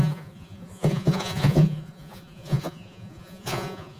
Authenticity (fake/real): fake